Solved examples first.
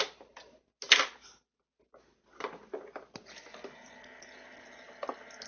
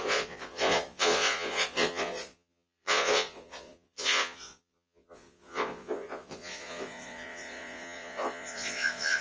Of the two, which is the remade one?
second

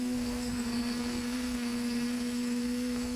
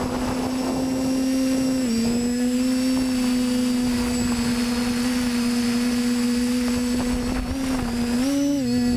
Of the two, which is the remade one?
first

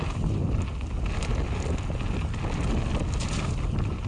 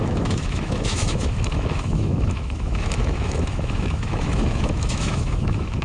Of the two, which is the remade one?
second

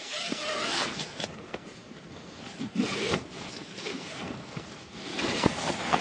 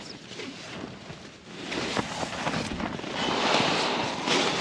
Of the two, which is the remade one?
first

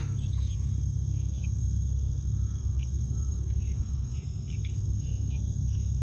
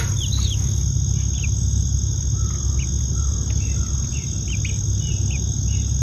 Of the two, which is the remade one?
first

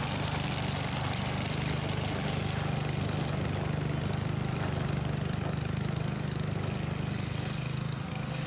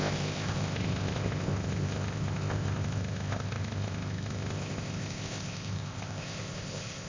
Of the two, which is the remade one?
second